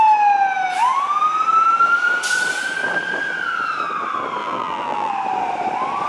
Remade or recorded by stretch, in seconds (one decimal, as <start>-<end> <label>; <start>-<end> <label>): 0.0-4.4 recorded; 4.4-5.1 remade; 5.1-6.1 recorded